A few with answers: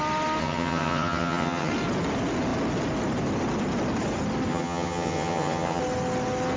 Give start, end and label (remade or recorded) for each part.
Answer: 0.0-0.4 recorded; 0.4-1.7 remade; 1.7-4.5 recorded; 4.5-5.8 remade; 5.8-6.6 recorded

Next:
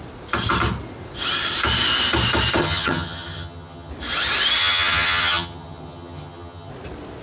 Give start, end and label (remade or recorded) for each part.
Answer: 0.0-2.6 recorded; 2.6-3.9 remade; 3.9-4.6 recorded; 4.6-6.7 remade; 6.7-7.2 recorded

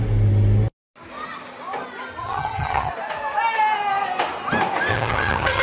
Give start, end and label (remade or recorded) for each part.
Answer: 0.0-2.2 recorded; 2.2-2.9 remade; 2.9-4.9 recorded; 4.9-5.6 remade

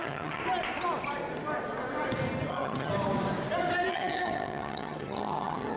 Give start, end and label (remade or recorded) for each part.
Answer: 0.0-0.4 remade; 0.4-2.5 recorded; 2.5-2.9 remade; 2.9-3.9 recorded; 3.9-5.8 remade

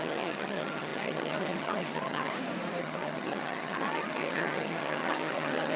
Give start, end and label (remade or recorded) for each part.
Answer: 0.0-2.3 remade; 2.3-2.8 recorded; 2.8-5.8 remade